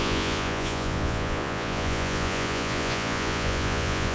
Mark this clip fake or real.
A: fake